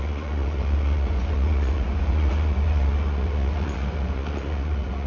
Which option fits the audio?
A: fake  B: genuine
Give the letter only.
A